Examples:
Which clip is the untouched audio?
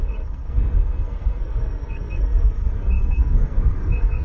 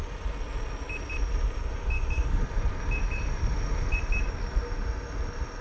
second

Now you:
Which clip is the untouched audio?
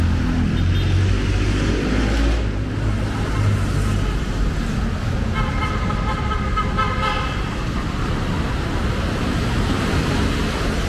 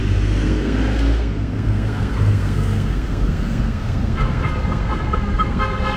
first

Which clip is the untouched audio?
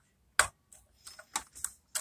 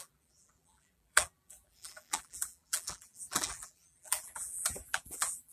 first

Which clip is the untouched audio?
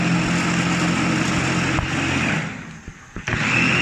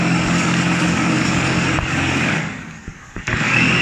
first